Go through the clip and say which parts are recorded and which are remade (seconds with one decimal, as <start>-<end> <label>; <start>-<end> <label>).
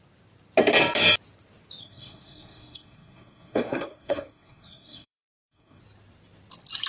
0.0-1.8 recorded; 1.8-5.8 remade; 5.8-6.9 recorded